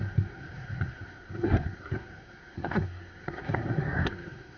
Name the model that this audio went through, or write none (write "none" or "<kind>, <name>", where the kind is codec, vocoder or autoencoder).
codec, SNAC